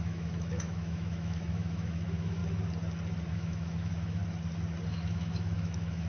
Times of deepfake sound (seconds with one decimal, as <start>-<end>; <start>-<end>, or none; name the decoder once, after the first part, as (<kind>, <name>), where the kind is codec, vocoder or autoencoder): 0.0-2.4 (autoencoder, DAC-VAE); 3.3-4.2; 4.9-6.1